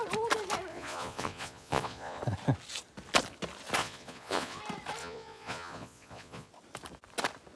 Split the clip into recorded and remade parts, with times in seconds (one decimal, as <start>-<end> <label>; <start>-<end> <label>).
0.0-0.7 recorded; 0.7-2.2 remade; 2.2-3.8 recorded; 3.8-4.6 remade; 4.6-5.0 recorded; 5.0-6.5 remade; 6.5-7.6 recorded